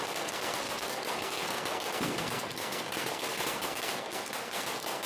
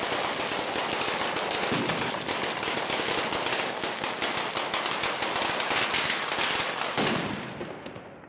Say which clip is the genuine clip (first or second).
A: second